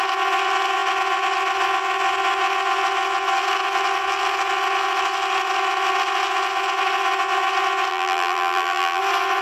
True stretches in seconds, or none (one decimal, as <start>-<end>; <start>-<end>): 0.0-7.9; 9.0-9.4

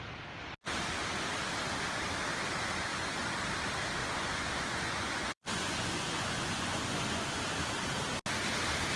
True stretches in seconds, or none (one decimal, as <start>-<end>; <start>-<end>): 0.0-2.9; 3.4-4.0; 7.4-9.0

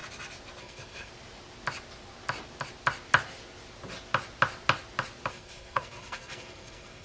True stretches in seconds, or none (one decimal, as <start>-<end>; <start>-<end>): 0.0-0.6; 1.1-5.3

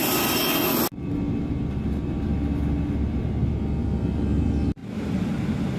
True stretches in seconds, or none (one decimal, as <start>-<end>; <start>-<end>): 0.0-5.8